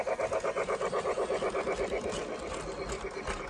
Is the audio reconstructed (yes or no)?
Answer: no